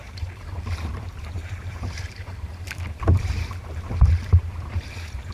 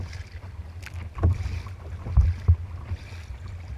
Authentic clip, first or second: second